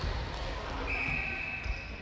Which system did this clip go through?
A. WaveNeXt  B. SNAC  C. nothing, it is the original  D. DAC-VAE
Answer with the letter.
C